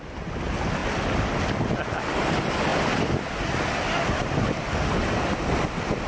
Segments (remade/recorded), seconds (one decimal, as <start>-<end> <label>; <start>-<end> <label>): 0.0-2.7 recorded; 2.7-6.1 remade